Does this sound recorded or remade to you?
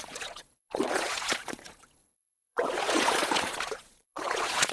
remade